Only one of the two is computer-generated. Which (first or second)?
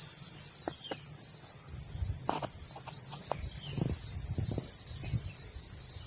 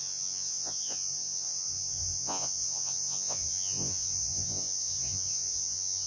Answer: second